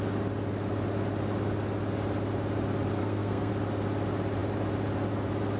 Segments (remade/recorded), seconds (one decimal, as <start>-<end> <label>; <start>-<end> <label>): 0.0-3.0 recorded; 3.0-3.5 remade; 3.5-5.6 recorded